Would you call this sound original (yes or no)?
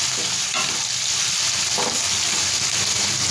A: yes